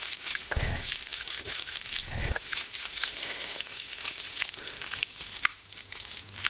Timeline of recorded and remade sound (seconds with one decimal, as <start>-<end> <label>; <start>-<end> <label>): 0.0-6.5 remade